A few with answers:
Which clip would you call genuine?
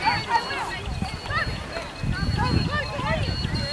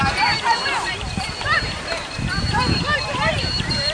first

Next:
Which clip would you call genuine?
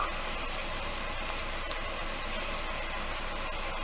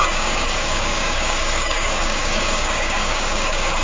first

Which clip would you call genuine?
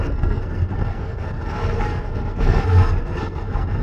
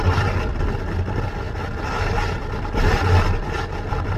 second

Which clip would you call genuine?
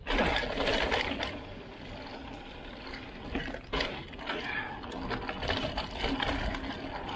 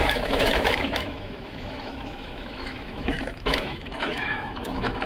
first